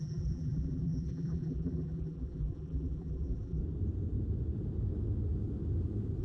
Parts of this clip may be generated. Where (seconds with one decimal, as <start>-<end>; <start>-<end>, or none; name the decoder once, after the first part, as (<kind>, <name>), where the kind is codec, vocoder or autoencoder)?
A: 0.0-3.6 (vocoder, BigVGAN v2)